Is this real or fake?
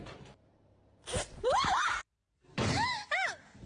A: fake